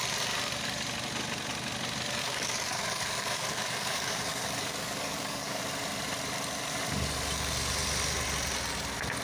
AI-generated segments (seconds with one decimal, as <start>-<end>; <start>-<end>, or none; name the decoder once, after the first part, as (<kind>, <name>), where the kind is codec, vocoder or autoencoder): 2.2-5.6 (codec, DAC)